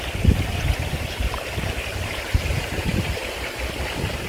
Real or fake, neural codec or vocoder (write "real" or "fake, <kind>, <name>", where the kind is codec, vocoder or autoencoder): fake, vocoder, BigVGAN v2